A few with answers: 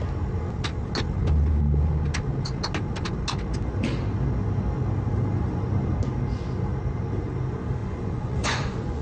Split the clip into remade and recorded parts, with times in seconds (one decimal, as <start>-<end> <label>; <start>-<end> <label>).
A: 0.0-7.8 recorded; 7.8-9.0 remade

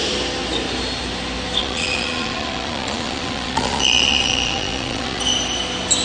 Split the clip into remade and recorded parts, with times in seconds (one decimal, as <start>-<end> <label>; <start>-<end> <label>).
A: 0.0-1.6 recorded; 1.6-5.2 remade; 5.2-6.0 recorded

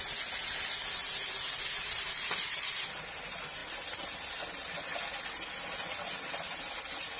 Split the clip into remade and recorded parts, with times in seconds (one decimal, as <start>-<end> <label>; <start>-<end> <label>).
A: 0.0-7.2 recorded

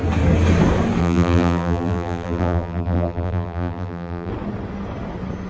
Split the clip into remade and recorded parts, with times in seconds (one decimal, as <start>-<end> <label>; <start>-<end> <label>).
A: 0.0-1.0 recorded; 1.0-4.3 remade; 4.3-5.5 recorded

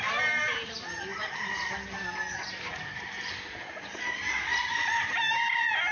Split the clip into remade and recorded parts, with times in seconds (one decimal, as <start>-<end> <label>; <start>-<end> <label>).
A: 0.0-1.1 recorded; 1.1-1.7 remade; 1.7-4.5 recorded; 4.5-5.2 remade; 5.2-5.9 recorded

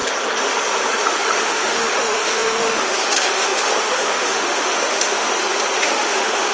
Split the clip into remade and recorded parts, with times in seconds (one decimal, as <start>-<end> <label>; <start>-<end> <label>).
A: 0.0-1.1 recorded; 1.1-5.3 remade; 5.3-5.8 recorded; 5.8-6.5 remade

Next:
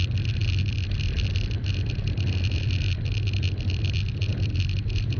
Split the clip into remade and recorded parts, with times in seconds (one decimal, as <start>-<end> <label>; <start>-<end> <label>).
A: 0.0-5.2 recorded

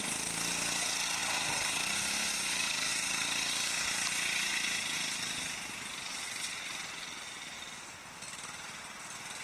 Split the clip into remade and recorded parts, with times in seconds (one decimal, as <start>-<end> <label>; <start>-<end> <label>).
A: 0.0-1.2 recorded; 1.2-2.9 remade; 2.9-9.4 recorded